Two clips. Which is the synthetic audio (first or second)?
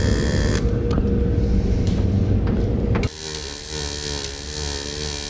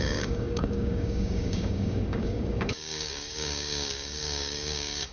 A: second